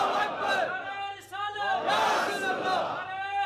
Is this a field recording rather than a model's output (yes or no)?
yes